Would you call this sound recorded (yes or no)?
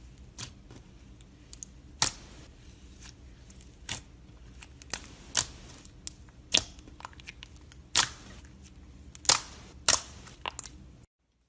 yes